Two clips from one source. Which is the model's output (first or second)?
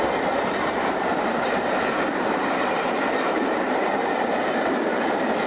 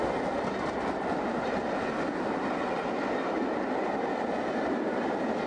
first